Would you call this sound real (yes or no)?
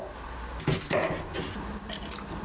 yes